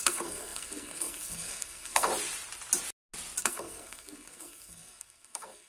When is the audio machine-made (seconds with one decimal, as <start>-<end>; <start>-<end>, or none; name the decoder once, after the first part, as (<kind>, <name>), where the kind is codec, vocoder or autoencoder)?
0.0-2.1 (codec, SNAC); 3.4-5.7